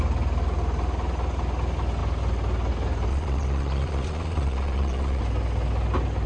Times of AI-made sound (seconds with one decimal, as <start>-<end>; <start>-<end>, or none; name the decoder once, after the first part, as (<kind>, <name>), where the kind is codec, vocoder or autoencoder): 3.1-5.2 (vocoder, Vocos)